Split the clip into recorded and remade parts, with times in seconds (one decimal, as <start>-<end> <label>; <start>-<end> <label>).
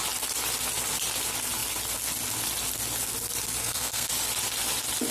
0.0-3.6 recorded; 3.6-4.1 remade; 4.1-5.1 recorded